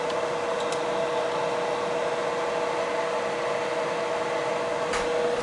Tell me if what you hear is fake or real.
real